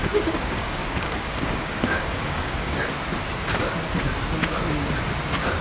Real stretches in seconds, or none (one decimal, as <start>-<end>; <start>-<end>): 2.8-5.6